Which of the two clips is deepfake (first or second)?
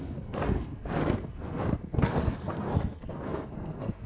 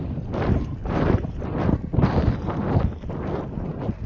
first